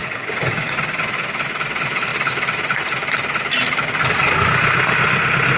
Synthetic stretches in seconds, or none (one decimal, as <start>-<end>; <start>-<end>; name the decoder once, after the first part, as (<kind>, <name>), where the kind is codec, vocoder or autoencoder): 0.0-1.0 (codec, DAC)